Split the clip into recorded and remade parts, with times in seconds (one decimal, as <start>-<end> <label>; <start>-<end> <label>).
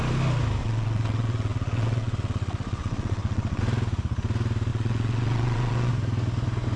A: 0.0-0.6 recorded; 0.6-3.6 remade; 3.6-4.7 recorded; 4.7-5.9 remade; 5.9-6.8 recorded